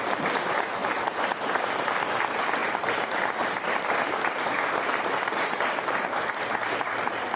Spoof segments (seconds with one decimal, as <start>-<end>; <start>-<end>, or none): 2.6-6.3